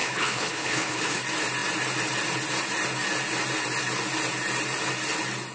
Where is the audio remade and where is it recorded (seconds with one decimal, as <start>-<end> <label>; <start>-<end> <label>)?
0.0-1.2 remade; 1.2-5.5 recorded